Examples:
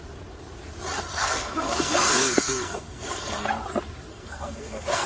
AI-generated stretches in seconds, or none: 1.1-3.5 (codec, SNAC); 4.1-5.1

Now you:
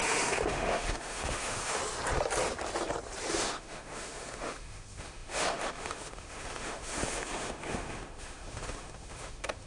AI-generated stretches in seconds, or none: 0.0-1.8 (autoencoder, DAC-VAE); 3.3-9.7